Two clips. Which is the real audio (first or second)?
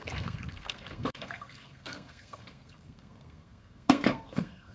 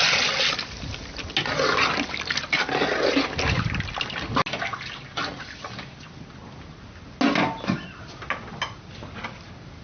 second